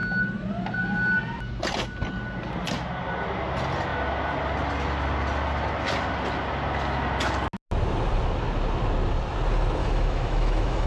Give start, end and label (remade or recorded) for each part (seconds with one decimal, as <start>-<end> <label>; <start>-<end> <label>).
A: 0.0-9.8 recorded; 9.8-10.9 remade